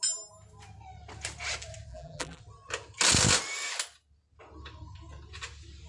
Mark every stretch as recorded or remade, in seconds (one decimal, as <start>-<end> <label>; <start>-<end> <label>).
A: 0.0-1.9 recorded; 1.9-2.4 remade; 2.4-5.9 recorded